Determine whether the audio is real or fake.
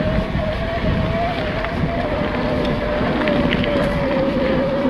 real